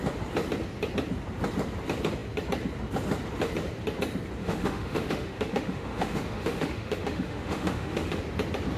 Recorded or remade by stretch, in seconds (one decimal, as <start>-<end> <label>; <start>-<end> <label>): 0.0-4.4 recorded; 4.4-8.2 remade; 8.2-8.8 recorded